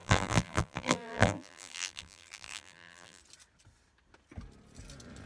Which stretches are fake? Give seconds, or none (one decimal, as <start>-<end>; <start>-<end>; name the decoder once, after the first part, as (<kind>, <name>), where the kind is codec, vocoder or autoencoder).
0.0-3.2 (vocoder, BigVGAN v2)